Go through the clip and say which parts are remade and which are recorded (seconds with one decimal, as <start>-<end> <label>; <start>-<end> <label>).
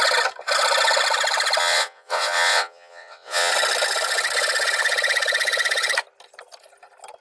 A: 0.0-1.6 recorded; 1.6-3.5 remade; 3.5-7.2 recorded